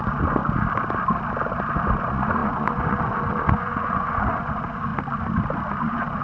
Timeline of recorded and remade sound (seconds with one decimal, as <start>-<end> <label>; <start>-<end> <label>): 0.0-0.4 remade; 0.4-1.9 recorded; 1.9-4.9 remade; 4.9-5.8 recorded; 5.8-6.2 remade